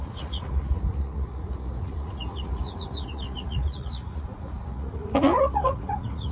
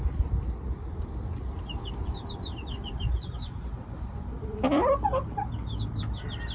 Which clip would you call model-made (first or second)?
first